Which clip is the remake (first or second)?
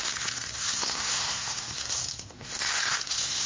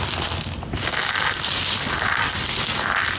first